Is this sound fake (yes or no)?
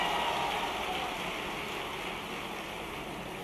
no